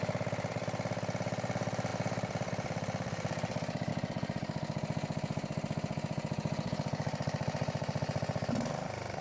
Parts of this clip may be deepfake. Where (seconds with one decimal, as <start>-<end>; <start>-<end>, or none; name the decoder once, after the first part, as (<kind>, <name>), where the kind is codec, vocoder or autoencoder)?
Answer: 1.9-3.9 (vocoder, BigVGAN v2)